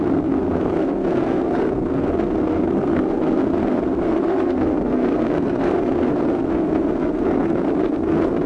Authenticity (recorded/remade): remade